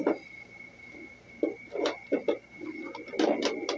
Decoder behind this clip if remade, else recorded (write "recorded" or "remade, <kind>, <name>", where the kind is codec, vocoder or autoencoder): recorded